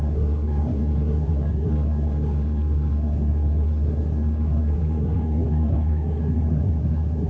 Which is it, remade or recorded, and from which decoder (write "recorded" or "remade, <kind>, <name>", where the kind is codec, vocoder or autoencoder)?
remade, codec, SNAC